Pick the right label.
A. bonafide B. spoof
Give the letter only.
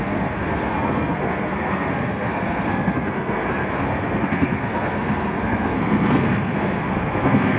B